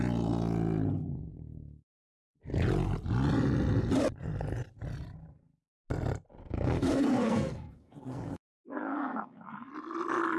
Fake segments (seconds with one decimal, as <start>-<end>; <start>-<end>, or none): 6.4-9.7